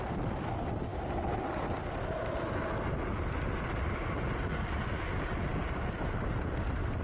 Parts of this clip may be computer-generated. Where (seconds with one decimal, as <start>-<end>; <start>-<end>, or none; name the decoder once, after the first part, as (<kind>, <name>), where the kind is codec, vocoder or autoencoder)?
none